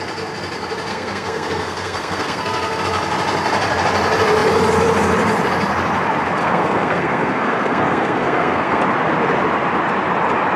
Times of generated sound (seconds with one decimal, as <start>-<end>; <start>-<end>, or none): 0.9-2.8; 6.4-8.8